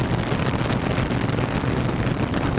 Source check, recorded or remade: recorded